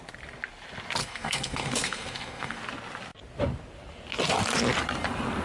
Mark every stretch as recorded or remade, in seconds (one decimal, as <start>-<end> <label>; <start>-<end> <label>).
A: 0.0-1.0 recorded; 1.0-2.6 remade; 2.6-5.4 recorded